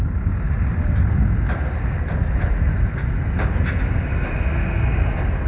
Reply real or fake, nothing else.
real